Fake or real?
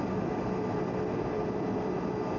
real